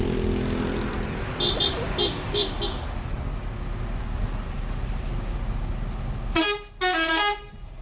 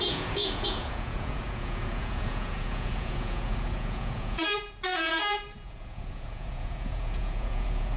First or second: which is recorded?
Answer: first